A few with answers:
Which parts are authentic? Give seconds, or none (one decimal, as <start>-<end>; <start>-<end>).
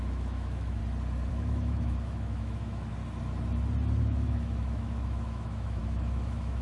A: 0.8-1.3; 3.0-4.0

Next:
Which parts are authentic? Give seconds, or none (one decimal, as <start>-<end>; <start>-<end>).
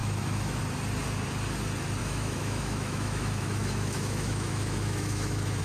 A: 0.6-2.0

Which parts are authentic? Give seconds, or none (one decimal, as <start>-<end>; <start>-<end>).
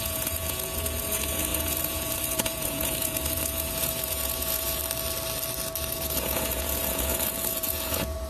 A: 4.8-5.9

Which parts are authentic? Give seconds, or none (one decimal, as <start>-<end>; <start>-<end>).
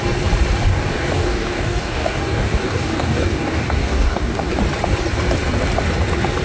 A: 0.0-0.7; 4.5-6.4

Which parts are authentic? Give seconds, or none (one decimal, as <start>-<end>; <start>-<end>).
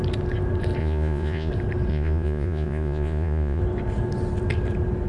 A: 0.0-0.8; 1.5-1.9; 3.6-5.1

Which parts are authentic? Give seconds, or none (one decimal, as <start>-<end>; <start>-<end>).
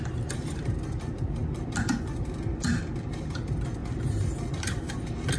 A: 1.4-3.3; 3.8-4.5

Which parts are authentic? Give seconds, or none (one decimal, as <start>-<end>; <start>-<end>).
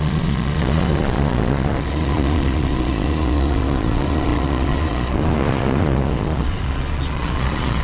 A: none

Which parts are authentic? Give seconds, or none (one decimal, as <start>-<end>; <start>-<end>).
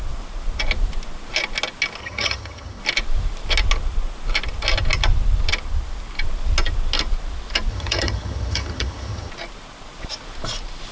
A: 0.0-2.0; 2.8-7.7; 9.3-10.9